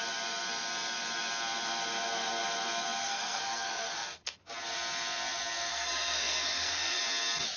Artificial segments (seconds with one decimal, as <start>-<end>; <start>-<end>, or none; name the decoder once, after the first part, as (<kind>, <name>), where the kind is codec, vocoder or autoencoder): 3.0-4.4 (codec, SNAC); 5.7-7.0